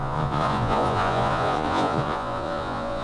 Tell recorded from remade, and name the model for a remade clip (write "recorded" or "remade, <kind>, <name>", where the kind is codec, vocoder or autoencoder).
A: remade, vocoder, Vocos